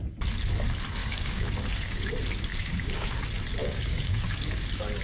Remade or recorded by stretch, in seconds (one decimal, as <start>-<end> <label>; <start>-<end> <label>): 0.0-1.0 recorded; 1.0-2.1 remade; 2.1-2.5 recorded; 2.5-3.2 remade; 3.2-3.6 recorded; 3.6-5.0 remade